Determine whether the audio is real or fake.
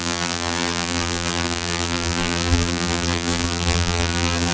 fake